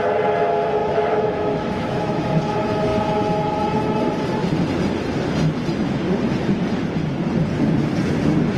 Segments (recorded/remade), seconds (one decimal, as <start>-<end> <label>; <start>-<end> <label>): 0.0-0.8 recorded; 0.8-2.3 remade; 2.3-8.6 recorded